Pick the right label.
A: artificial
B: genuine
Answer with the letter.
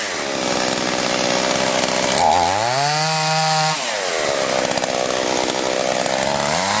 B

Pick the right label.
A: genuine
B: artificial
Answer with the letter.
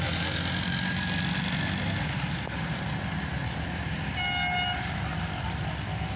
A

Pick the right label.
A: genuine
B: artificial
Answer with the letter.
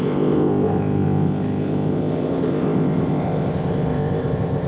B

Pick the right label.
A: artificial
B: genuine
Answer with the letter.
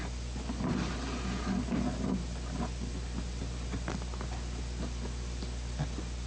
B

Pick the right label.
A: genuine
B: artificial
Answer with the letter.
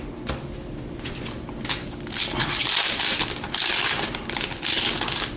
A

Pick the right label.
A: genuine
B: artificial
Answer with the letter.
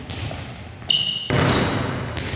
A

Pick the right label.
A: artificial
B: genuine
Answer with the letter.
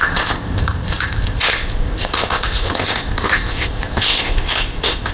A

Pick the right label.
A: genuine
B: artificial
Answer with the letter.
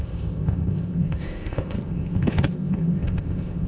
B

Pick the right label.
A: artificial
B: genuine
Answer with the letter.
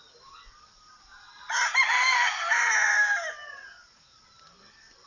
B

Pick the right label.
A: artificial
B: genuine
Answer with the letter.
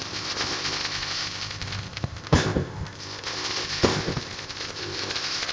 A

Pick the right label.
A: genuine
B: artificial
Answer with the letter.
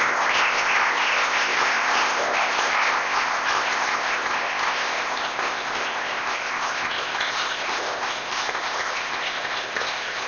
B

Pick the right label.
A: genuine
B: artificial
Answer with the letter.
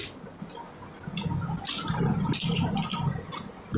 A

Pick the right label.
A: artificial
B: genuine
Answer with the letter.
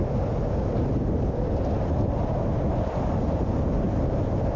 B